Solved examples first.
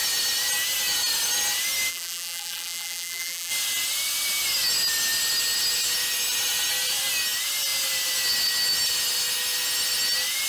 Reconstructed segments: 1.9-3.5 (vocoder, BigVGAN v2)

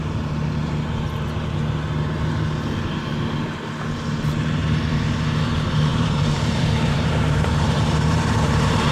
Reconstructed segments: 5.9-8.9 (vocoder, BigVGAN v2)

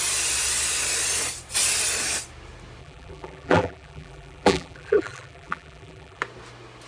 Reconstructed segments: 2.8-6.2 (vocoder, BigVGAN v2)

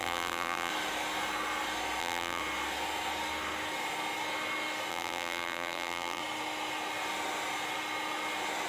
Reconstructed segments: 0.0-0.7 (vocoder, BigVGAN v2); 2.0-2.4; 4.9-6.2

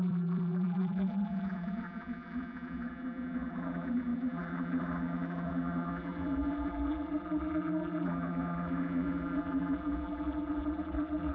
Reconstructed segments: 0.0-11.3 (vocoder, BigVGAN v2)

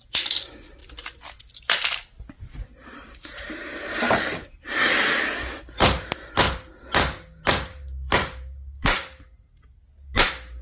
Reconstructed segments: 2.7-4.9 (vocoder, BigVGAN v2); 7.7-9.4

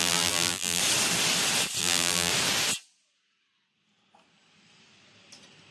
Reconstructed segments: 0.0-0.8 (vocoder, BigVGAN v2); 1.8-2.3

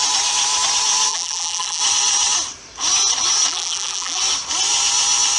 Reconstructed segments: 1.1-1.8 (vocoder, BigVGAN v2); 3.5-4.2